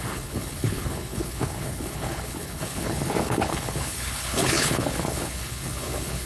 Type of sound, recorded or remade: remade